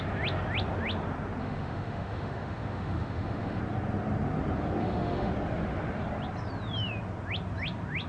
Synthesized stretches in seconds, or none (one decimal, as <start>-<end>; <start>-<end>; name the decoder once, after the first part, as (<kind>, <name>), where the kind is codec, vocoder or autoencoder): 1.4-3.6 (autoencoder, DAC-VAE); 4.8-5.3